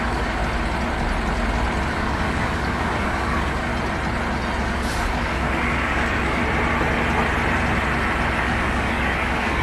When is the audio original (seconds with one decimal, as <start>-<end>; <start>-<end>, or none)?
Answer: 0.4-1.9; 3.7-4.6; 6.4-8.4